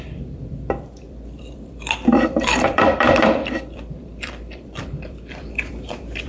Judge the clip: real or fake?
fake